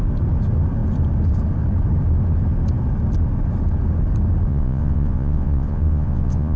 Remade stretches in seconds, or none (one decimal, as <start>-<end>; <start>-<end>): 4.5-6.6